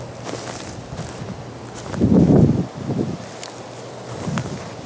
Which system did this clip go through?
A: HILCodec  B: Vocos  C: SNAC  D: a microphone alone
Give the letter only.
D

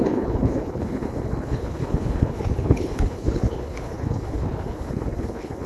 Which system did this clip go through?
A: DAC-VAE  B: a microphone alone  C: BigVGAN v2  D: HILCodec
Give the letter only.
D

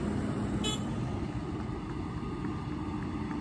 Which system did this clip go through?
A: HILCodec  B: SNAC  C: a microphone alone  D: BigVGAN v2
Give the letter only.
C